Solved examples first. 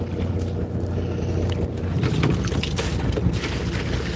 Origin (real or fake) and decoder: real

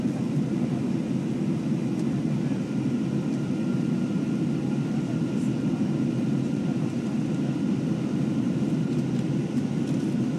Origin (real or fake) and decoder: real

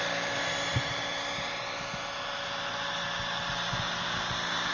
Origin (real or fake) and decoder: real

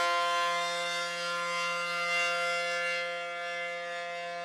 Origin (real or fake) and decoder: real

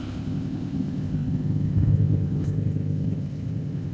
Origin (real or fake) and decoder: fake, codec, ZipCodec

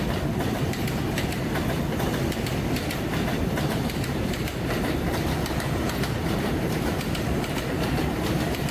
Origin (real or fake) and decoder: fake, vocoder, BigVGAN v2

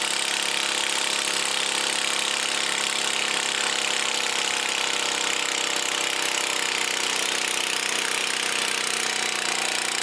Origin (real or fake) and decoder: real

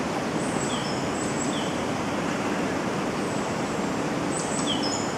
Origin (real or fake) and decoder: fake, vocoder, BigVGAN v2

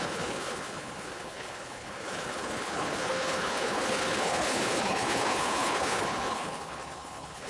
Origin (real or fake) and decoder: fake, codec, HILCodec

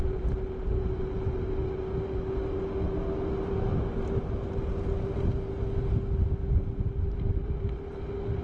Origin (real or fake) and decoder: real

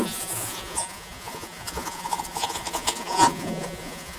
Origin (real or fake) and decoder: fake, vocoder, Vocos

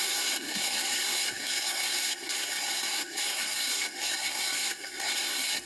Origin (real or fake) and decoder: fake, codec, SNAC